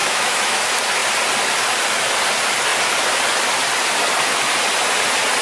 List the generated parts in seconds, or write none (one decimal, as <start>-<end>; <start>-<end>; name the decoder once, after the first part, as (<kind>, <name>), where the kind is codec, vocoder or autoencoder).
0.0-0.6 (autoencoder, DAC-VAE)